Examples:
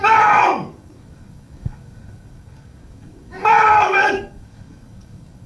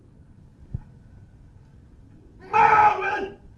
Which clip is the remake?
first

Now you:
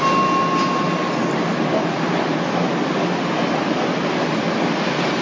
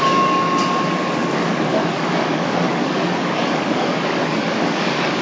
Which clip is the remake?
second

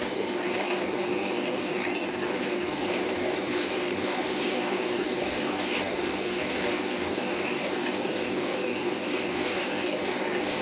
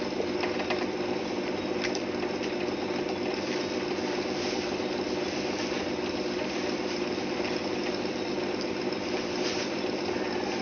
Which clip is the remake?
first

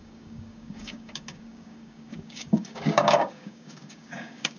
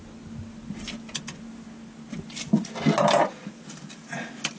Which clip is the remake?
first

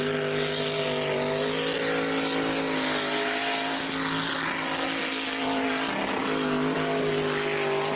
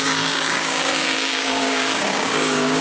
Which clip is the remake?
second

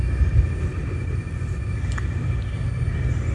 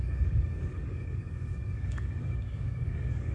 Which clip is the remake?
second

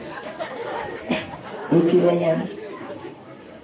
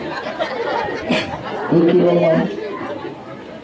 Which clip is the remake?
first